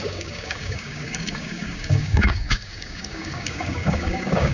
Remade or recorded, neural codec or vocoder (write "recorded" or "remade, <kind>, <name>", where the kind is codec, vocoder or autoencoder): remade, codec, DAC